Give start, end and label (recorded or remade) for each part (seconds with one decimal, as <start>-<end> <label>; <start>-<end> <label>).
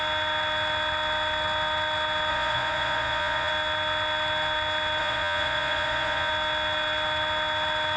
0.0-2.3 recorded; 2.3-3.5 remade; 3.5-5.0 recorded; 5.0-6.3 remade; 6.3-8.0 recorded